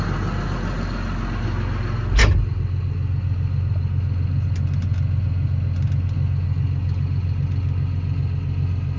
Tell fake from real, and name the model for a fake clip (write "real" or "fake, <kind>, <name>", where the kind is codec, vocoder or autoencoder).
real